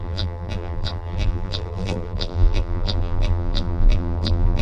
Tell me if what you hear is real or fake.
fake